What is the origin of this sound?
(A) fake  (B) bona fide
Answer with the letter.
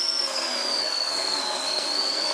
A